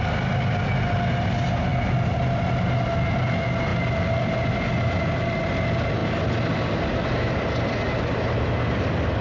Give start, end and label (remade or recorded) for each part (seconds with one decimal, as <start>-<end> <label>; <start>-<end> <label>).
0.0-9.2 recorded